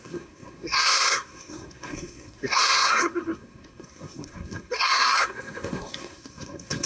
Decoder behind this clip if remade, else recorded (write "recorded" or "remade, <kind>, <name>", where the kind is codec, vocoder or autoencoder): remade, codec, SNAC